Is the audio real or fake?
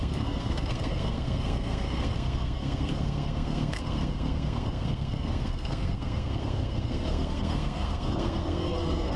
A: fake